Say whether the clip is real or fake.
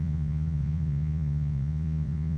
fake